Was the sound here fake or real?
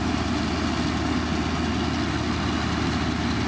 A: real